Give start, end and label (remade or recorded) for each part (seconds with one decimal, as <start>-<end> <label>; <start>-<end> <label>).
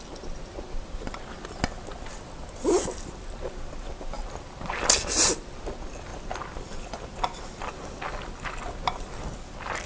0.0-9.9 recorded